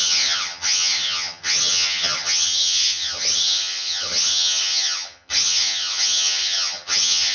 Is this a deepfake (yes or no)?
yes